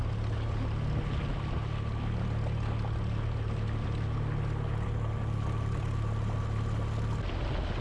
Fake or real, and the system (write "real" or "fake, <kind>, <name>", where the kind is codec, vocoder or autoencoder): real